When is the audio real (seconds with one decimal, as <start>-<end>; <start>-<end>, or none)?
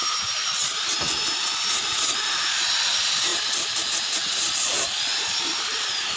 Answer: 0.0-6.2